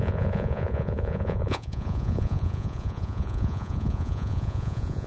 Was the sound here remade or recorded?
remade